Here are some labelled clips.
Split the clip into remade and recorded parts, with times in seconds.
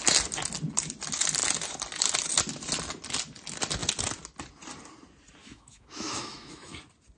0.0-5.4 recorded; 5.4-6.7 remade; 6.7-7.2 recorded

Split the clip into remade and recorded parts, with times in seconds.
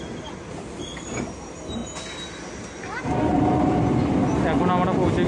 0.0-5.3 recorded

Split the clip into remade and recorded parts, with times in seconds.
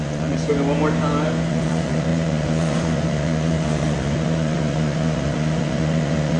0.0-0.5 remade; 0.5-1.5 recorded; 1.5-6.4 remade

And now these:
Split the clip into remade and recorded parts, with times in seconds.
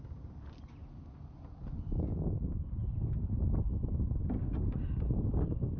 0.0-5.8 recorded